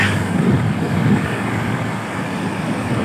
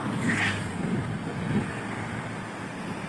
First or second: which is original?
second